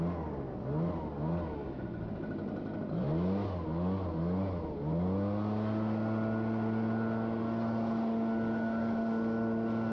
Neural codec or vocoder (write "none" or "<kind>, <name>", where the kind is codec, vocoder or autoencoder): none